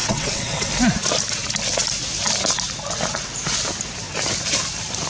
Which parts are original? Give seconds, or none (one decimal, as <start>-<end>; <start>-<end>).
0.7-5.1